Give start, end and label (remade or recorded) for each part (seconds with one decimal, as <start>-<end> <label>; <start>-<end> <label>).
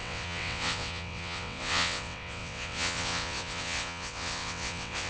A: 0.0-5.1 remade